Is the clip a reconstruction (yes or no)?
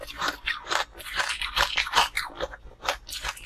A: no